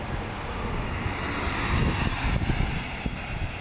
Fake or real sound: real